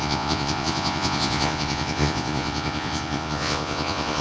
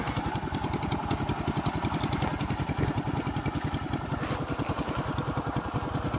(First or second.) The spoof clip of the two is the first